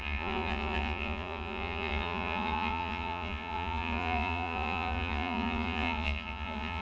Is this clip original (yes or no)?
no